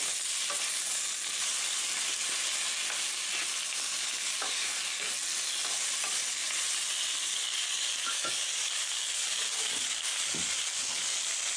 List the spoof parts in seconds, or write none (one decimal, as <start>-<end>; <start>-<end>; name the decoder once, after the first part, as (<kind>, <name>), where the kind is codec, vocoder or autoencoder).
4.0-5.1 (codec, DAC); 7.2-11.2